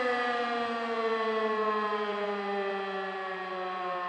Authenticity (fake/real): fake